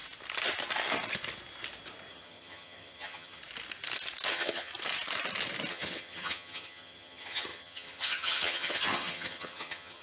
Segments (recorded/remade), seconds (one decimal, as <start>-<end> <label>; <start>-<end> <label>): 0.0-2.1 recorded; 2.1-3.4 remade; 3.4-4.3 recorded; 4.3-4.7 remade; 4.7-5.7 recorded; 5.7-10.0 remade